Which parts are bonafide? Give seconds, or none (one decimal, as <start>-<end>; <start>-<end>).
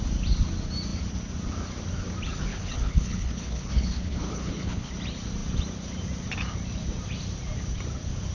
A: 0.0-2.5; 4.9-8.3